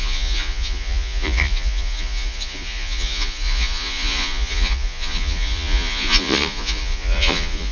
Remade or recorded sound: remade